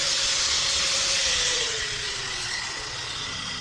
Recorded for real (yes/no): no